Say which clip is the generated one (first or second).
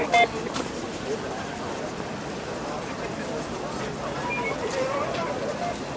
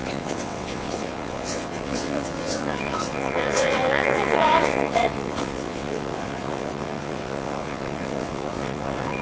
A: second